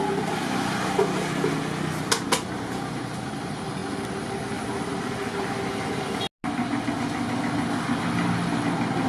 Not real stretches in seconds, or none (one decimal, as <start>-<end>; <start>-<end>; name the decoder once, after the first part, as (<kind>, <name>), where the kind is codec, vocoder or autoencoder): none